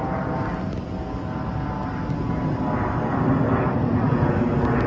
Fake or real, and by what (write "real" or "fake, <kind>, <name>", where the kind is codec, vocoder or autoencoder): real